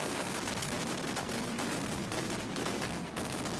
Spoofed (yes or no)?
yes